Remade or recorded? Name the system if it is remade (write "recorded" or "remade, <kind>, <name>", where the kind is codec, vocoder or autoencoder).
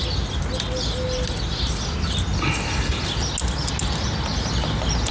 recorded